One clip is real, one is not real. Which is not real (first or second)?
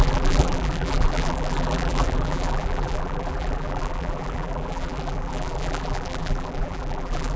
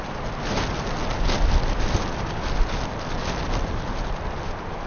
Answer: first